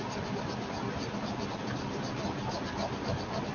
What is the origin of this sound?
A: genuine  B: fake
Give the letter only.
A